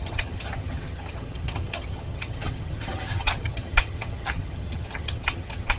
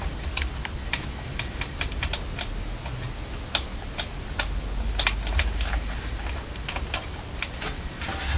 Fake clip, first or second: first